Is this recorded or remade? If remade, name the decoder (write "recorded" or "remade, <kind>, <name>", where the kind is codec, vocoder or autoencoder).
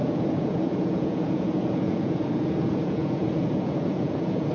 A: remade, vocoder, Vocos